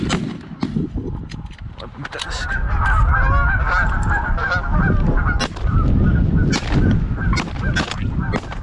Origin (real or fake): real